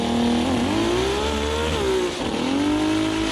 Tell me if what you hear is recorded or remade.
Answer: recorded